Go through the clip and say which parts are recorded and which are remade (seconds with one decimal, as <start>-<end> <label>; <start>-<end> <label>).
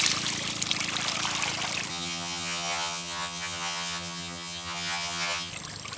0.0-1.9 recorded; 1.9-5.5 remade; 5.5-6.0 recorded